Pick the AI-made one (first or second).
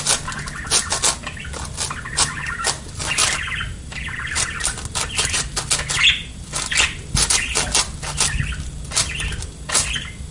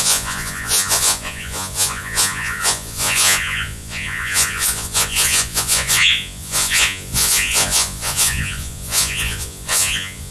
second